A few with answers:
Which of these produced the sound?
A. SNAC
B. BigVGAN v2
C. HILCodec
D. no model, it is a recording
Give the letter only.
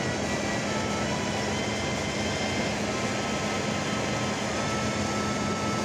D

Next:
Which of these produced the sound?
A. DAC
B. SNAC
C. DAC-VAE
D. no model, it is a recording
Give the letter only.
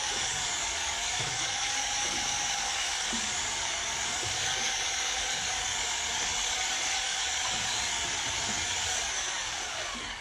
A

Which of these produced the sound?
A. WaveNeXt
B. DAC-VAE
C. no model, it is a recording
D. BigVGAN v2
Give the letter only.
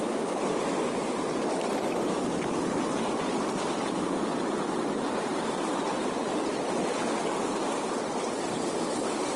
D